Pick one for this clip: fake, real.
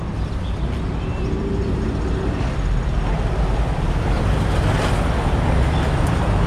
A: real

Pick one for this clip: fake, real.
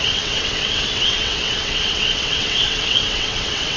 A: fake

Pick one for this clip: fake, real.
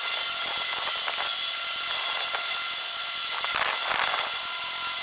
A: real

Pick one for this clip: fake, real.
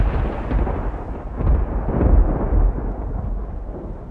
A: real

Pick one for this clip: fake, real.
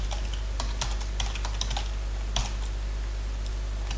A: real